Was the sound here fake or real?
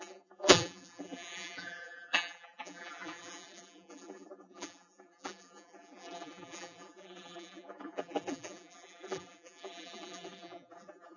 fake